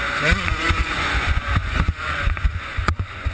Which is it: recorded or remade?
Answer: remade